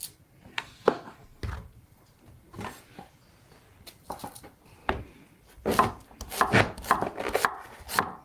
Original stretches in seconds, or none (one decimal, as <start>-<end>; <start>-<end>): 0.0-0.5; 1.4-8.2